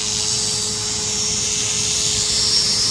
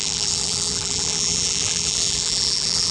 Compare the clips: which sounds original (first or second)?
first